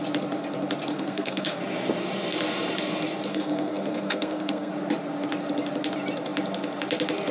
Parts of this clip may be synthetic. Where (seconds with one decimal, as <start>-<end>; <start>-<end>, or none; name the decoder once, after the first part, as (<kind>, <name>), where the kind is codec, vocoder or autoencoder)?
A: 0.9-1.6 (codec, SNAC); 3.3-4.7